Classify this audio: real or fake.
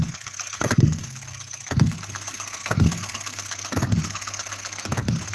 fake